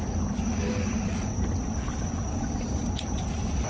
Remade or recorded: recorded